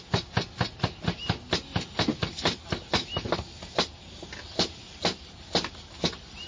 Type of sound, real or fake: real